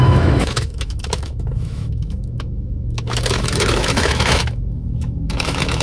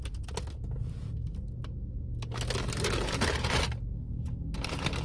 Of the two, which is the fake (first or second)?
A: first